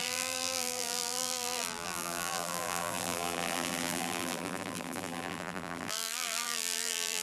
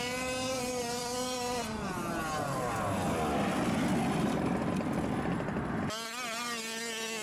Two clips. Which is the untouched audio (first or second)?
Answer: second